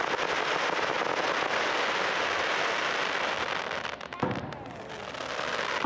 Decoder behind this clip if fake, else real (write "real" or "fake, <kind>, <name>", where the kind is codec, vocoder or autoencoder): real